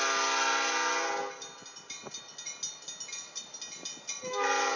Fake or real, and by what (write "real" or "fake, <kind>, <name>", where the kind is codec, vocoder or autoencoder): real